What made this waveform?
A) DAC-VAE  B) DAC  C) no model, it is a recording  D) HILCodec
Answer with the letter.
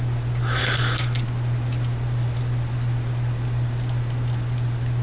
C